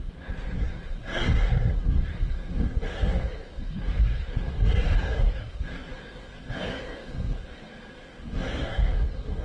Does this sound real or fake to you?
fake